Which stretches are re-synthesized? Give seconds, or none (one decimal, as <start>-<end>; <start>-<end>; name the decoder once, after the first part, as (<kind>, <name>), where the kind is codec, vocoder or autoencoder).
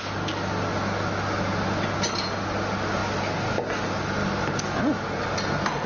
none